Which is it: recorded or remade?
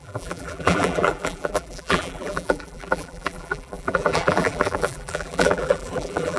remade